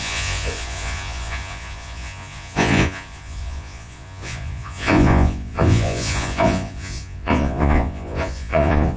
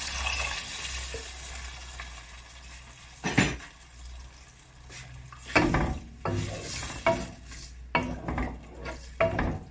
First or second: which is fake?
first